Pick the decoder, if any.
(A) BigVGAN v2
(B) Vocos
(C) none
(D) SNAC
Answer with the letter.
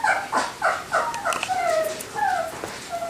C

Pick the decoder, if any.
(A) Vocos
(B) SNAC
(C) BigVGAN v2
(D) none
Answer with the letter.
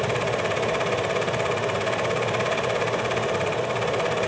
D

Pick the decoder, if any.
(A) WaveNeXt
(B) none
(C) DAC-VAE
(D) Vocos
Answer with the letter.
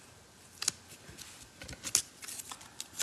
B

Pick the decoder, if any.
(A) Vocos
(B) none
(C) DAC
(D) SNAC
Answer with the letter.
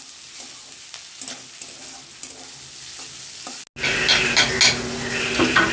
B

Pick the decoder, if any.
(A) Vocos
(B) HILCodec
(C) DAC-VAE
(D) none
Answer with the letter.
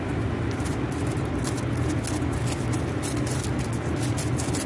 D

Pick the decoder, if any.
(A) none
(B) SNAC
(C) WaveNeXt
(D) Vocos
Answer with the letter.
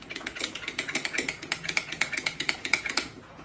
D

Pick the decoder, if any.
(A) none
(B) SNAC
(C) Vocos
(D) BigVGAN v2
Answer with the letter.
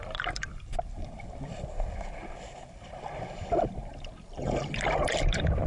A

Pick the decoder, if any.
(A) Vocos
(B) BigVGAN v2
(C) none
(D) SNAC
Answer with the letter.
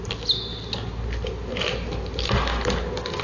C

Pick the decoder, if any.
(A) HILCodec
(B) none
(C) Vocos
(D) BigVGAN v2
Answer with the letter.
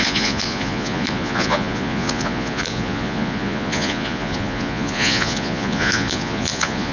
C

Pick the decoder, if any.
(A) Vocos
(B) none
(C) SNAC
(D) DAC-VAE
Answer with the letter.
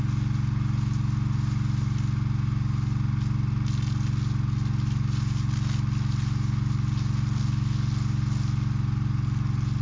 B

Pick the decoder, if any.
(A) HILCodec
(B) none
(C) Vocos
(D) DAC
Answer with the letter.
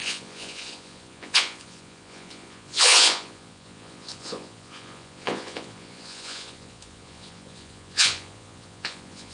C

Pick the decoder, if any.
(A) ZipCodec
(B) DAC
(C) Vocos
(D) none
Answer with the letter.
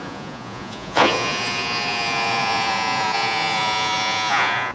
C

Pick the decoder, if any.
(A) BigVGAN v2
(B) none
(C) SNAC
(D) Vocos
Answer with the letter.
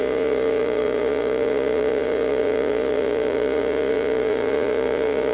D